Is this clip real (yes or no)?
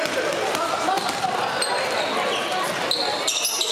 yes